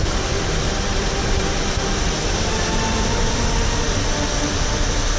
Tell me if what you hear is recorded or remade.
recorded